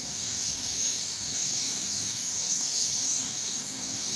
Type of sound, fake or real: fake